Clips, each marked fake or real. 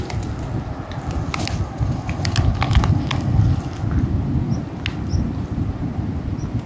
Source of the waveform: real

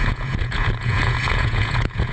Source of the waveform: fake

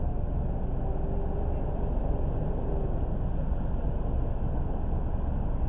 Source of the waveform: real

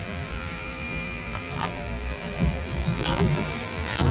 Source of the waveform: fake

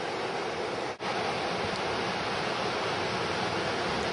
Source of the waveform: real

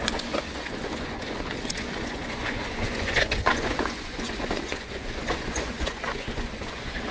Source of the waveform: fake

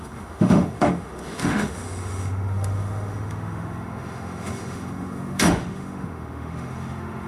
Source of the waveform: fake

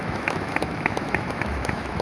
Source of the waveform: fake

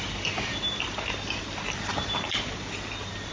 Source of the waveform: real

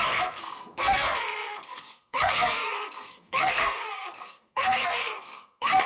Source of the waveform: fake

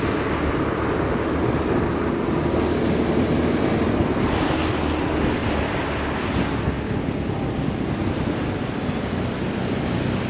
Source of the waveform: real